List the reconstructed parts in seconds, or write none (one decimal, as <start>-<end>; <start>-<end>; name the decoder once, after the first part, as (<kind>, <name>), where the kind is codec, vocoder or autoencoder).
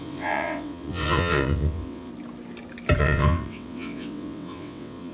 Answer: 0.0-2.1 (vocoder, WaveNeXt); 3.0-5.1